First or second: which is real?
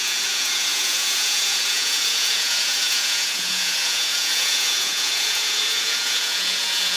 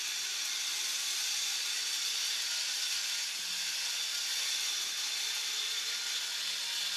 second